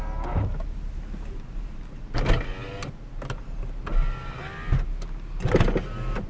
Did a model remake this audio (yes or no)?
no